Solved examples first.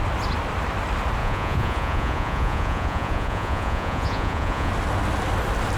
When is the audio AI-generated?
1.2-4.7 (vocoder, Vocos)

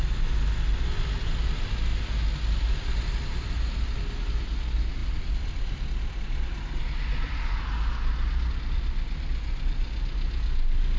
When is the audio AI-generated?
none